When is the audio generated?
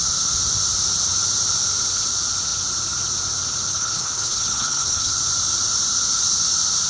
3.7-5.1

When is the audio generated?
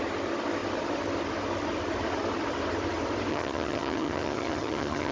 3.3-5.1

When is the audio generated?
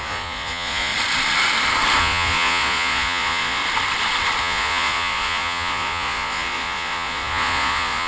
0.0-0.9; 2.0-3.6; 4.4-8.1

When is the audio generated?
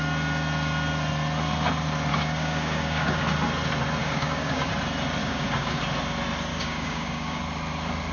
2.1-3.2; 4.0-4.7; 5.2-5.8; 6.5-7.4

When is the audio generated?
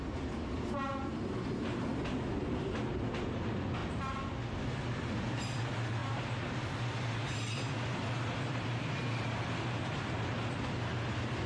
none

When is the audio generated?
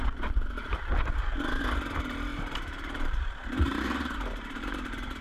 0.7-1.3; 2.3-5.2